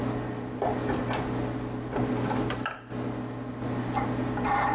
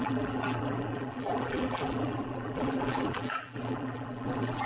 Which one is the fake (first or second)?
second